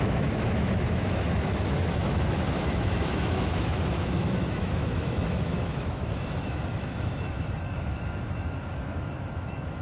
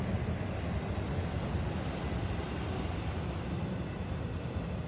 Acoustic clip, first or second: second